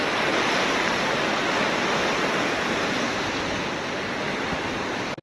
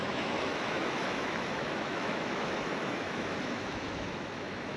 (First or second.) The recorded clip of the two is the first